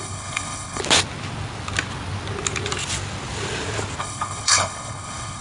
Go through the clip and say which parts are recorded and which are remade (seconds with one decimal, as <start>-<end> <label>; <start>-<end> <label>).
0.0-0.8 remade; 0.8-4.0 recorded; 4.0-5.4 remade